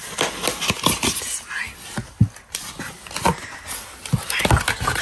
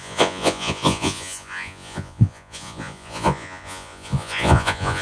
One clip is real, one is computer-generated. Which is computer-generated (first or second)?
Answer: second